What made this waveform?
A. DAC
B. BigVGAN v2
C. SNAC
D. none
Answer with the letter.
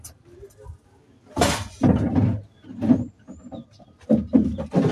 B